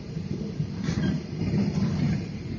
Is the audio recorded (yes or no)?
no